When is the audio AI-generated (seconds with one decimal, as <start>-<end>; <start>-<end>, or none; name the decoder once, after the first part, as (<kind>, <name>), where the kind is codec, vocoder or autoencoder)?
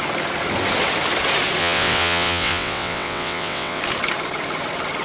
1.6-3.8 (vocoder, WaveNeXt)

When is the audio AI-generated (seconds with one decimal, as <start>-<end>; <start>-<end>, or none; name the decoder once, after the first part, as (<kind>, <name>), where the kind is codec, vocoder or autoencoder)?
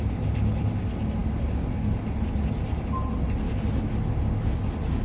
none